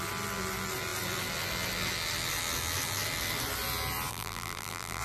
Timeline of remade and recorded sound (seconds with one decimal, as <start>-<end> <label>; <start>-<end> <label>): 0.0-4.1 recorded; 4.1-5.0 remade

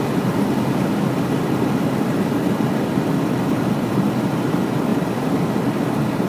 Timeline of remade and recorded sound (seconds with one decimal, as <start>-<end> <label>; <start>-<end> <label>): 0.0-6.3 recorded

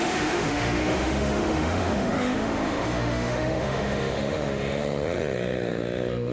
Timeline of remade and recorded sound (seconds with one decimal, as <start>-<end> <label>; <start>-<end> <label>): 0.0-6.3 remade

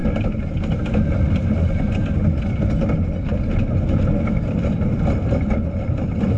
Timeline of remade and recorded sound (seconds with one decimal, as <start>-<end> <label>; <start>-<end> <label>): 0.0-1.1 recorded; 1.1-6.4 remade

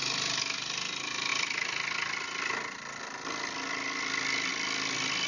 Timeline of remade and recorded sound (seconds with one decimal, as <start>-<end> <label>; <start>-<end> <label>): 0.0-5.3 recorded

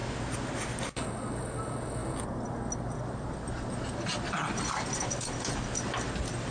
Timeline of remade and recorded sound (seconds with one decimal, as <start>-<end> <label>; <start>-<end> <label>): 0.0-6.5 recorded

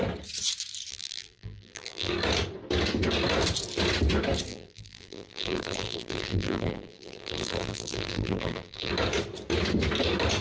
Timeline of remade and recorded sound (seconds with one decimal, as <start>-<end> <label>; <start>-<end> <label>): 0.0-0.9 recorded; 0.9-2.1 remade; 2.1-4.5 recorded; 4.5-8.9 remade; 8.9-10.4 recorded